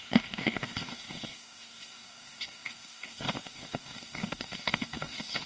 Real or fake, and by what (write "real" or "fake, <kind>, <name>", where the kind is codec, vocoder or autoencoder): fake, codec, DAC